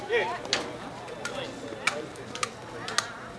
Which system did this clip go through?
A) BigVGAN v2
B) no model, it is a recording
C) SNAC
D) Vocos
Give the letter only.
B